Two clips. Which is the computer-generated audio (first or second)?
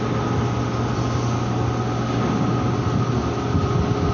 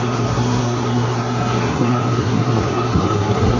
second